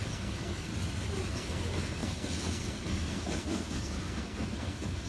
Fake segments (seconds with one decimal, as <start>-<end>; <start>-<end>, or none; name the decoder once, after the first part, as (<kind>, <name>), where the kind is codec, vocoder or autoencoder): 0.0-0.7 (codec, SNAC); 1.3-5.1